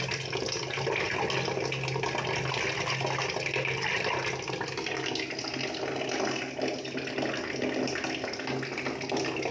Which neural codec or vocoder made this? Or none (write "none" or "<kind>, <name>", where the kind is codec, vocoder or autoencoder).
none